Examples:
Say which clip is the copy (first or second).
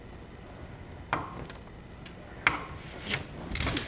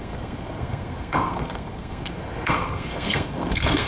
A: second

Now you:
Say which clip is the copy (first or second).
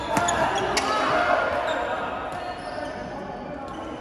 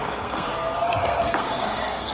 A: second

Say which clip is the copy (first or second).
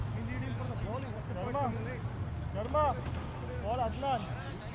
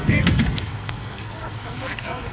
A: second